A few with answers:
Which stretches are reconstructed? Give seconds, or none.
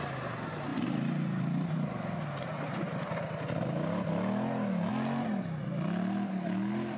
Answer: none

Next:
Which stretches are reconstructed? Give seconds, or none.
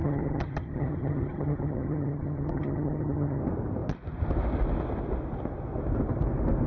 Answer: 0.0-3.4 (vocoder, HiFi-GAN)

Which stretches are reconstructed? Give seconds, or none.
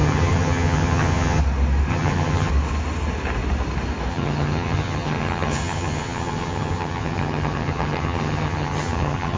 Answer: 0.0-1.4 (vocoder, HiFi-GAN); 1.9-2.5; 4.1-9.4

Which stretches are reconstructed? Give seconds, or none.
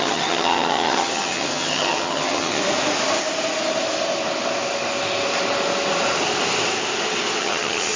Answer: 0.0-2.6 (vocoder, HiFi-GAN); 7.4-8.0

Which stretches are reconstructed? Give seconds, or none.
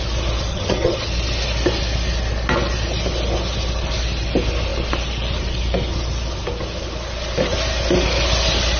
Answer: 0.5-1.1 (vocoder, HiFi-GAN)